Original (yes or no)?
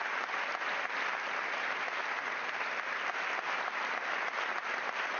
yes